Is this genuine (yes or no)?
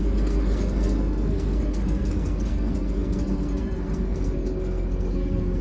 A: no